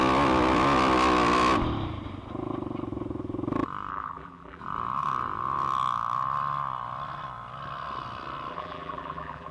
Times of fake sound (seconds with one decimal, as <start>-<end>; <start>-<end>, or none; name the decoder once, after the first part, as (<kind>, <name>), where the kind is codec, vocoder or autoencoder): 3.9-4.6 (vocoder, BigVGAN v2); 8.5-9.5